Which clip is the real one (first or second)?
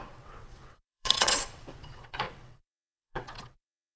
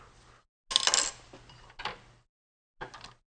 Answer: second